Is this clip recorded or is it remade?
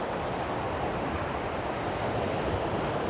recorded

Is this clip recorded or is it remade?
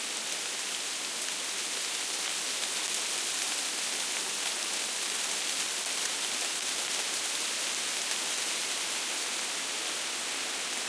recorded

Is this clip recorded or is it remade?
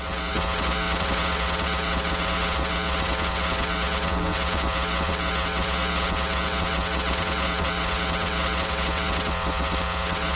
remade